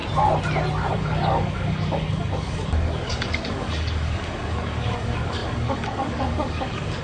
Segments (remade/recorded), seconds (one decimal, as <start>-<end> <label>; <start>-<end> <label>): 0.0-0.9 recorded; 0.9-7.0 remade